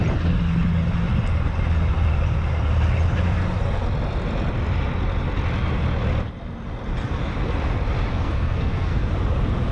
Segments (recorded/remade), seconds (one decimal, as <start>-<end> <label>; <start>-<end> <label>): 0.0-8.1 recorded; 8.1-9.1 remade; 9.1-9.7 recorded